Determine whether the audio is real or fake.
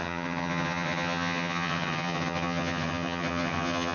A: fake